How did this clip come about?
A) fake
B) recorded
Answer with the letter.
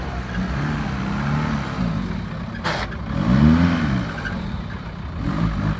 B